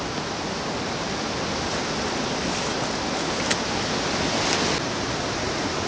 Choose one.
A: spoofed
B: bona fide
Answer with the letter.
B